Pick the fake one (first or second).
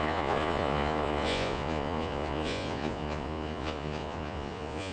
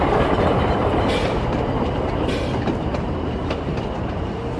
first